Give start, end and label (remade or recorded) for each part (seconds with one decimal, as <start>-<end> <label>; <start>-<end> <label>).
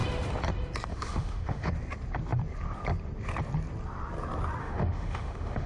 0.0-0.9 recorded; 0.9-1.7 remade; 1.7-4.6 recorded; 4.6-5.7 remade